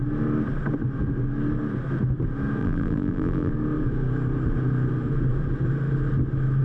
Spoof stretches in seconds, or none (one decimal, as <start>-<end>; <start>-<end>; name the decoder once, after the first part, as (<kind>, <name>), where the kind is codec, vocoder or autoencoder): 2.6-3.5 (vocoder, BigVGAN v2)